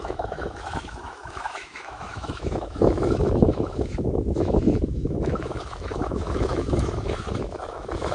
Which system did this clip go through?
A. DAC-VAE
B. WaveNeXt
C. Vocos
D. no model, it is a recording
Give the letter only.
A